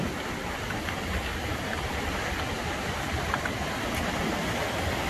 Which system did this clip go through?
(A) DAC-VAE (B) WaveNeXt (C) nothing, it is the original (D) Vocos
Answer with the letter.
C